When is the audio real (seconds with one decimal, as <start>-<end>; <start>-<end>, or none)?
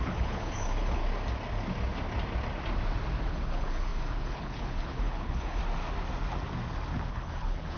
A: 1.0-3.3; 5.6-7.1